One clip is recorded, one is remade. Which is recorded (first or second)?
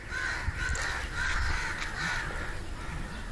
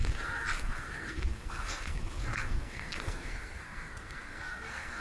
first